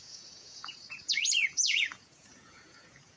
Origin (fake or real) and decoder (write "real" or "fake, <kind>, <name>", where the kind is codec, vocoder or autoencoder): fake, vocoder, Vocos